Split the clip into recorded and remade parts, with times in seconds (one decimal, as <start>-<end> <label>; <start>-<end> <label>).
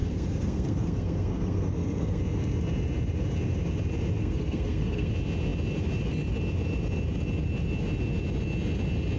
0.0-2.2 remade; 2.2-4.2 recorded; 4.2-5.1 remade; 5.1-9.2 recorded